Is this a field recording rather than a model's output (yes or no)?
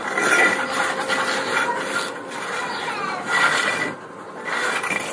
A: yes